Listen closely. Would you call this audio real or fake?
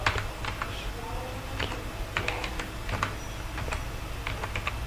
real